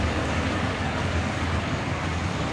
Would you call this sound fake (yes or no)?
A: yes